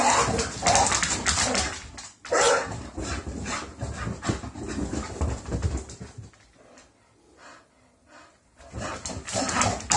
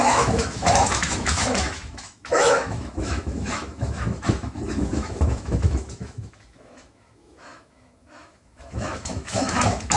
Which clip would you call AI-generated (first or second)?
second